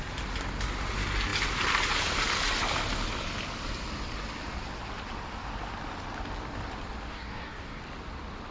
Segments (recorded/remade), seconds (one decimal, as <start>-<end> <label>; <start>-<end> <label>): 0.0-7.1 recorded; 7.1-7.8 remade; 7.8-8.5 recorded